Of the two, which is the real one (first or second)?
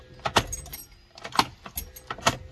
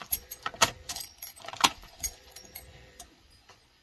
first